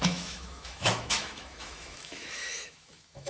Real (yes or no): no